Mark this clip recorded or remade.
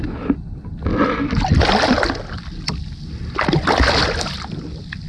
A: recorded